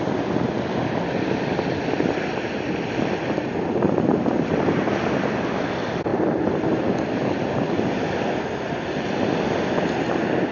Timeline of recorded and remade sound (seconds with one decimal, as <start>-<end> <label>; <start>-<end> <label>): 0.0-10.5 recorded